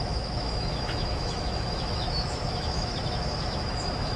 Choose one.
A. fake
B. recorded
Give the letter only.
A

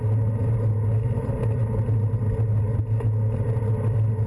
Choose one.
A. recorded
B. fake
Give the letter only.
A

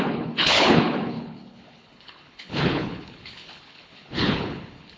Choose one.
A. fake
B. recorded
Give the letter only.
A